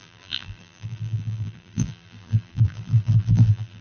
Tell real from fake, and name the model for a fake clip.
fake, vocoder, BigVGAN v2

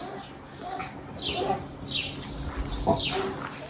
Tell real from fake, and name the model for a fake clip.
real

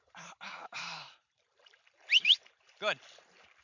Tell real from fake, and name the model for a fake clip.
fake, vocoder, BigVGAN v2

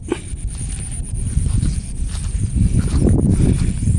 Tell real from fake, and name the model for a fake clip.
fake, vocoder, BigVGAN v2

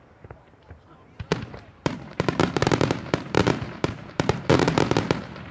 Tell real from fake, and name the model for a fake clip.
fake, vocoder, BigVGAN v2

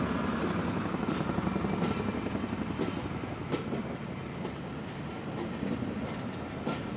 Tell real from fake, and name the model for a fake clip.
real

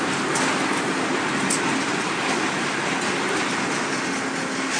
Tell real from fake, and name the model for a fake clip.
real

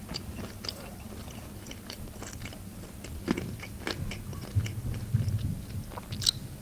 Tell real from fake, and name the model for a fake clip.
real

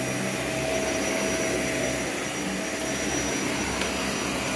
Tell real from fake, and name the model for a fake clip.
real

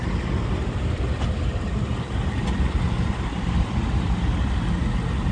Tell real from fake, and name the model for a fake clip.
real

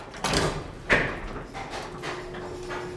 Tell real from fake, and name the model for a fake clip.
real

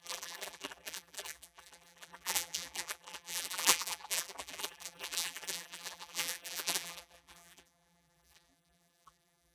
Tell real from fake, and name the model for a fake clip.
fake, vocoder, BigVGAN v2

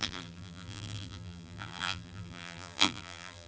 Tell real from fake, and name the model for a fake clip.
fake, vocoder, BigVGAN v2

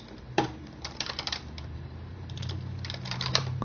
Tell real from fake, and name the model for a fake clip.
fake, vocoder, BigVGAN v2